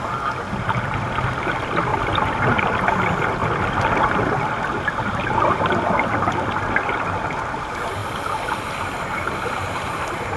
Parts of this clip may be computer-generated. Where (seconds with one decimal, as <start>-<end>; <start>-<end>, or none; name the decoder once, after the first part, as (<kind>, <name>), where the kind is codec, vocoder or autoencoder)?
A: 1.9-2.9 (vocoder, BigVGAN v2); 8.0-10.4